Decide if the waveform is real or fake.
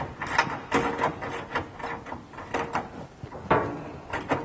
real